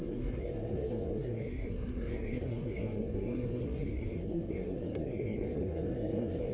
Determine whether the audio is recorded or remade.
remade